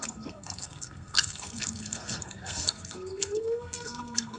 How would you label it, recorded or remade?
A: remade